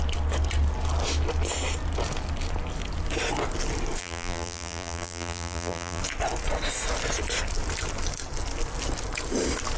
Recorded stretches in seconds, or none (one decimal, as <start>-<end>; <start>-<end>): 0.0-4.0; 6.0-9.8